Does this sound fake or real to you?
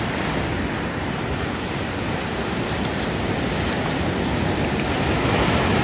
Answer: real